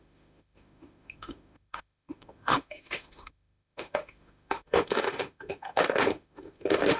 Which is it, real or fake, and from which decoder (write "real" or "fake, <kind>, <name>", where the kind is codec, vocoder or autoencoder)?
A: fake, autoencoder, DAC-VAE